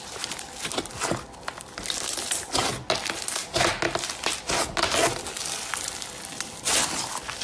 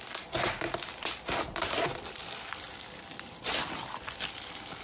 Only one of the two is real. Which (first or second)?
first